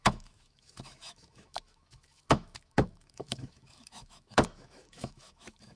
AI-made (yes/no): yes